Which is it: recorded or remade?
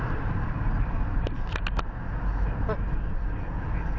recorded